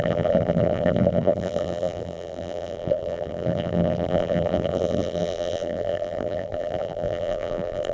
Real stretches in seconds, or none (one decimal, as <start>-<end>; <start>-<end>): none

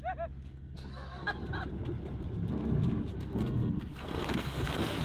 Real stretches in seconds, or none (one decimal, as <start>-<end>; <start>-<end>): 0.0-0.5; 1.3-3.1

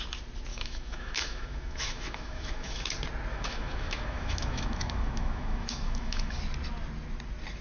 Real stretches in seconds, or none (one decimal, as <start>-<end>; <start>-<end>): 0.0-0.5; 2.9-3.3; 6.4-7.6

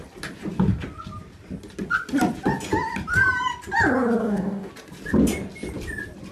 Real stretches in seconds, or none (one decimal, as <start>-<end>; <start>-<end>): 0.0-4.2; 4.7-6.3

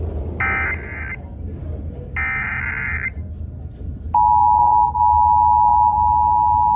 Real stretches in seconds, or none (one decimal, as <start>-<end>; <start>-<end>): 0.0-6.8

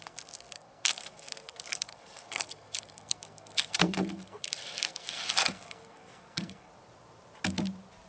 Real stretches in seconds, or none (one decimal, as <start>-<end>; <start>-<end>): 6.7-8.1

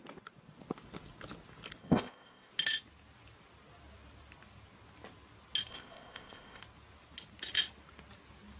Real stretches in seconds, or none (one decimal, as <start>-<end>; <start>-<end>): 0.0-1.8; 2.5-5.7; 6.6-8.6